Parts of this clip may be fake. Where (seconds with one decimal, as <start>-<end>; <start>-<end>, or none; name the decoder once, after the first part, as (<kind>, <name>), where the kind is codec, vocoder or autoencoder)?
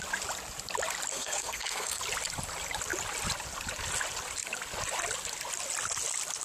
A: 1.1-2.0 (codec, SNAC)